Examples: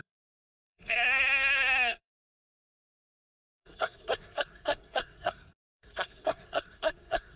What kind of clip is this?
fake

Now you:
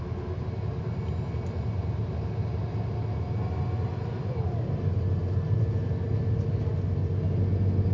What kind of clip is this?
real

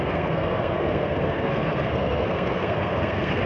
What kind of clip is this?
fake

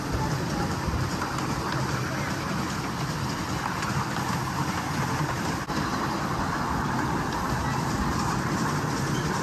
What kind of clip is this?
real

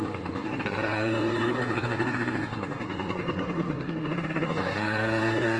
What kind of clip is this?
fake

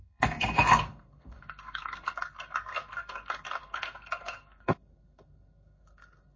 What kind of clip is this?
fake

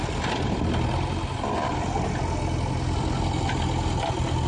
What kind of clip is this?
real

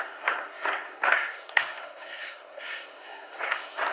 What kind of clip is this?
fake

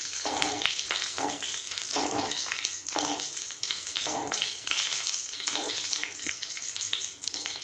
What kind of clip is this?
fake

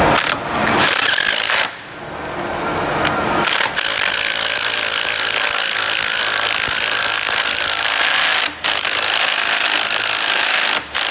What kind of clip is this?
real